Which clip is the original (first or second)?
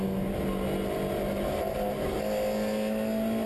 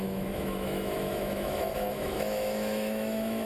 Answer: first